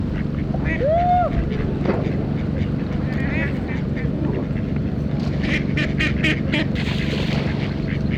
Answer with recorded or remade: recorded